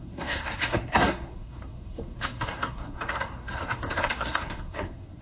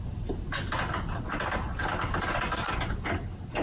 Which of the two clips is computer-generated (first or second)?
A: first